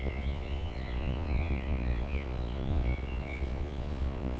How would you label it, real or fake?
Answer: fake